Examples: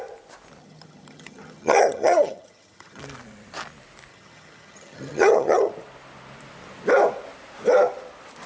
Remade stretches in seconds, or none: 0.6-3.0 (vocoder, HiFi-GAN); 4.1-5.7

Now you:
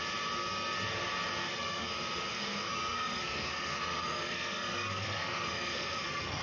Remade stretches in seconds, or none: 1.4-1.9 (codec, SNAC); 2.3-6.4